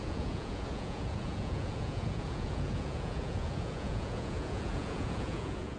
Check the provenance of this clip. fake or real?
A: fake